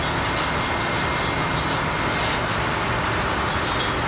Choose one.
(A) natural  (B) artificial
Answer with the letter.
A